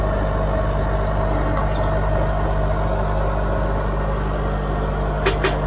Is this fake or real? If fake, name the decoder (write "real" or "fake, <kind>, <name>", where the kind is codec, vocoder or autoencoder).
real